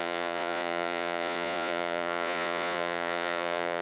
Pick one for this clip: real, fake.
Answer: fake